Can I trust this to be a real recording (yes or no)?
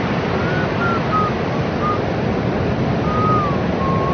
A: yes